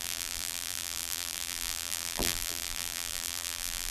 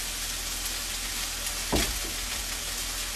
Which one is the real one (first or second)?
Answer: second